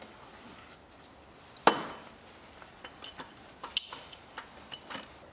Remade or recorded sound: recorded